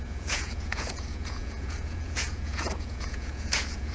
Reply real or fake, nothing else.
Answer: fake